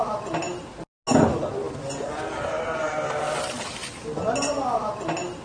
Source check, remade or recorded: recorded